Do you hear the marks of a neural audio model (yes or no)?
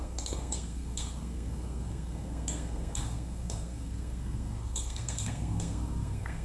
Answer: yes